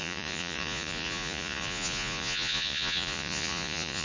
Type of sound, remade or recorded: remade